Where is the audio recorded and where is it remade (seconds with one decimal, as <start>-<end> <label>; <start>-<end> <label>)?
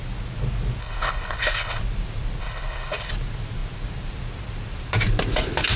0.0-0.8 recorded; 0.8-1.8 remade; 1.8-2.4 recorded; 2.4-3.1 remade; 3.1-5.8 recorded